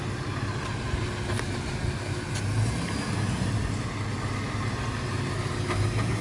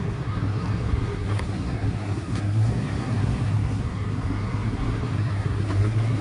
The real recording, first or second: first